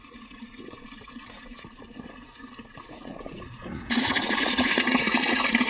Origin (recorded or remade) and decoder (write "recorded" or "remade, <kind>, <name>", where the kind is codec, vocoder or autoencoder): remade, vocoder, Vocos